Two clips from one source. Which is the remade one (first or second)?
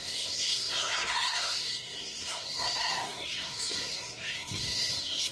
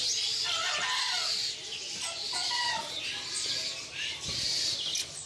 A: first